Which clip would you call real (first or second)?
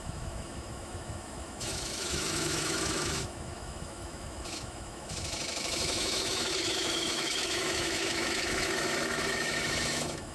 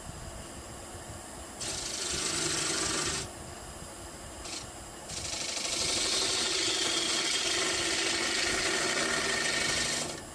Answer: second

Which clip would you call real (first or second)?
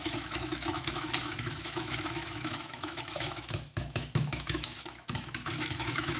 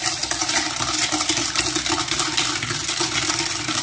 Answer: second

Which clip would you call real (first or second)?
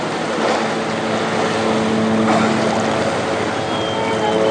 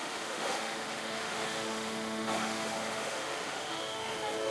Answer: first